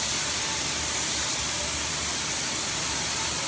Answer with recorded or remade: recorded